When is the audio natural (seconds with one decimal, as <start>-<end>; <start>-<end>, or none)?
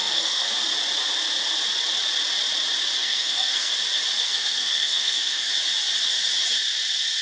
0.5-3.0; 3.7-4.2; 5.5-7.2